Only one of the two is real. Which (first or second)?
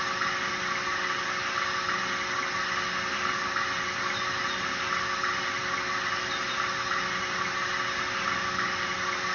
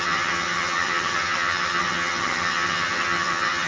first